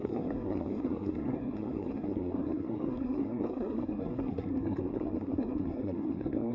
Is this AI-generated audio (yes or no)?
yes